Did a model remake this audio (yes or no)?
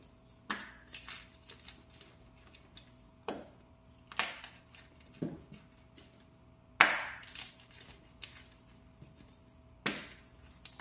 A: no